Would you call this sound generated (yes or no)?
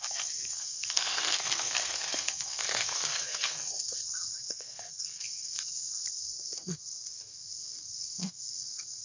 yes